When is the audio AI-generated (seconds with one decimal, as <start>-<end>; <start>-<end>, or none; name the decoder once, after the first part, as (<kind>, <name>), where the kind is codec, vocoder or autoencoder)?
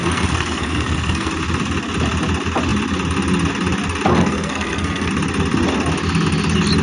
0.0-1.3 (codec, SNAC); 4.1-5.1